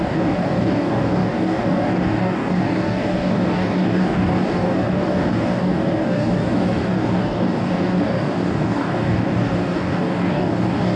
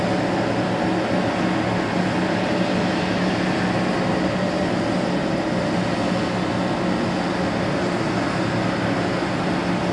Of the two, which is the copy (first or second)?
first